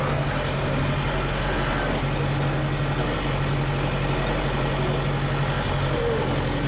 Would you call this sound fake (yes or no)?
no